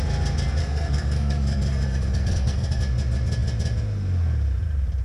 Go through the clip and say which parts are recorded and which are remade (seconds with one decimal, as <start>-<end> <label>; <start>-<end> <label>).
0.0-0.6 recorded; 0.6-2.8 remade; 2.8-5.0 recorded